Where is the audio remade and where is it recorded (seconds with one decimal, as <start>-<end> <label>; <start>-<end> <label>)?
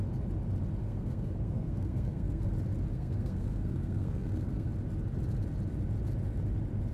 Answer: 0.0-0.8 recorded; 0.8-2.5 remade; 2.5-2.9 recorded; 2.9-4.7 remade; 4.7-6.9 recorded